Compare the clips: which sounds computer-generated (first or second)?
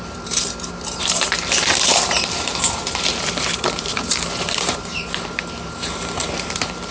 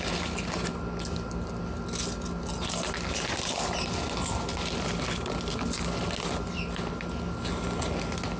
first